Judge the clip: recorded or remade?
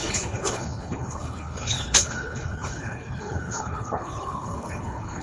remade